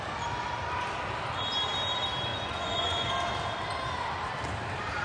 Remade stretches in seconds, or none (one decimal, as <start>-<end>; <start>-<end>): 2.3-3.1